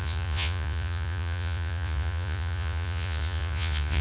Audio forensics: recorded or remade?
remade